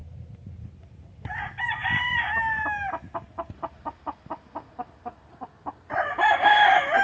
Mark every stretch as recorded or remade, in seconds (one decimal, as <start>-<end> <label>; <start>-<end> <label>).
0.0-7.0 recorded